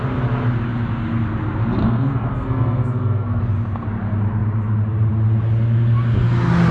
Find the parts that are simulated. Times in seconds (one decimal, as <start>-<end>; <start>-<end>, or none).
1.8-3.4